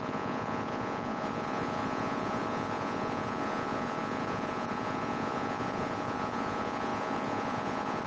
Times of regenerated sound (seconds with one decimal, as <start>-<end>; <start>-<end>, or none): 0.0-8.1